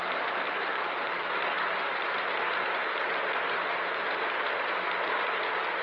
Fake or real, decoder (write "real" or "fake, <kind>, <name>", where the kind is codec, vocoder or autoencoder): real